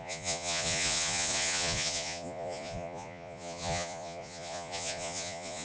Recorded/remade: remade